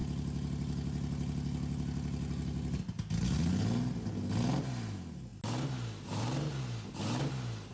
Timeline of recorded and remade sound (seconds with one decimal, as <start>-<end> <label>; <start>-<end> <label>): 0.0-7.7 recorded